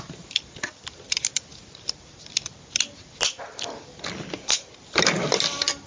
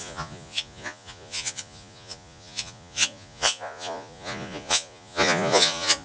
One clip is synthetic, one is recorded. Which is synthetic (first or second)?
second